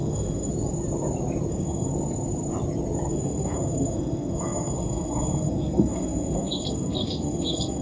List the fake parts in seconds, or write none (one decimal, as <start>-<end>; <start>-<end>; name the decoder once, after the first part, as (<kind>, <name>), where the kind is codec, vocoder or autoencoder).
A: 0.0-0.5 (codec, SNAC); 1.5-1.9; 3.1-7.8